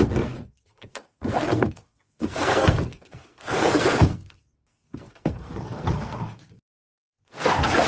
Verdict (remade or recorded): remade